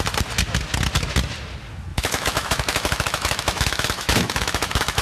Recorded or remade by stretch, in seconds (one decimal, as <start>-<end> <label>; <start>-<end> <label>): 0.0-1.9 recorded; 1.9-5.0 remade